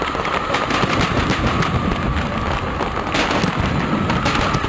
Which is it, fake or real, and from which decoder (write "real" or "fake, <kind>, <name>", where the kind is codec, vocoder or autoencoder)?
real